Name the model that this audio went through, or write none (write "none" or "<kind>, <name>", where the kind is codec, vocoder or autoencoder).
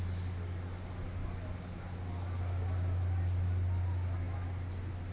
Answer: none